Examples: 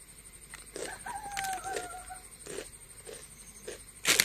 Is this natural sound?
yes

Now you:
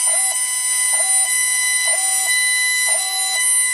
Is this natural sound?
yes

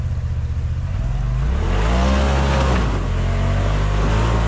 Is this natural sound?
yes